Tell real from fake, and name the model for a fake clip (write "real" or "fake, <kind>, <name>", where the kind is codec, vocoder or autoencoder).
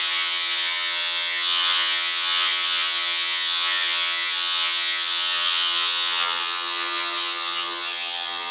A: fake, vocoder, HiFi-GAN